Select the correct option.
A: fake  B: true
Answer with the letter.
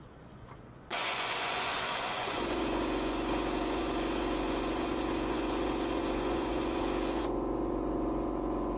A